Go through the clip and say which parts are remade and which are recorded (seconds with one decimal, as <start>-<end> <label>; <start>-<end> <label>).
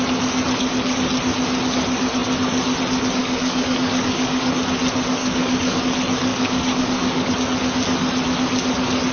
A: 0.0-3.2 recorded; 3.2-4.5 remade; 4.5-5.2 recorded; 5.2-5.8 remade; 5.8-6.3 recorded; 6.3-7.3 remade; 7.3-9.1 recorded